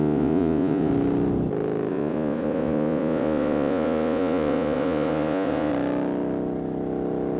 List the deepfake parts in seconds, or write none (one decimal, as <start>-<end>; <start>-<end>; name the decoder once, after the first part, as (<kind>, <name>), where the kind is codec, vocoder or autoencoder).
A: 0.0-0.9 (vocoder, Vocos); 1.9-5.7